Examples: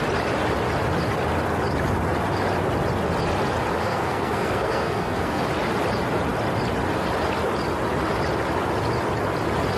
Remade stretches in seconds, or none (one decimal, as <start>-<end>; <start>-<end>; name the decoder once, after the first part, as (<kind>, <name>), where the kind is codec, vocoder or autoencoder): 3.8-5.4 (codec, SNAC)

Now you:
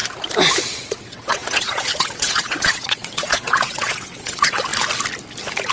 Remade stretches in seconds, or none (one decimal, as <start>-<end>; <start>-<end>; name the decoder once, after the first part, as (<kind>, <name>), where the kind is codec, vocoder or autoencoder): 0.6-4.7 (vocoder, WaveNeXt)

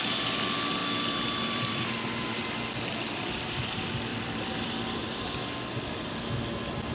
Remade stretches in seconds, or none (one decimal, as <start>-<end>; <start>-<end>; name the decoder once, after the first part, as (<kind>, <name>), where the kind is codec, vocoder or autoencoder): 0.8-2.5 (vocoder, BigVGAN v2); 4.1-5.4

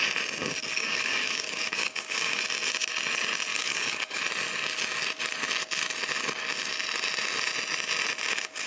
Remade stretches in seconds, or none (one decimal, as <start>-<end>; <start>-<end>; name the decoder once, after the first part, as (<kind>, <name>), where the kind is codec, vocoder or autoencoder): 0.6-2.4 (codec, DAC); 3.5-4.2

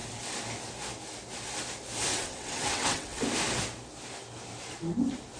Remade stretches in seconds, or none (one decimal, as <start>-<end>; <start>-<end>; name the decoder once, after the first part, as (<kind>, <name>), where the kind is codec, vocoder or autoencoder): 2.1-3.2 (vocoder, WaveNeXt)